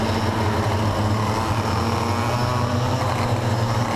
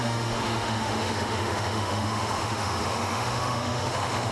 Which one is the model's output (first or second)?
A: second